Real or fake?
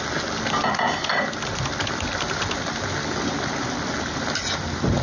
real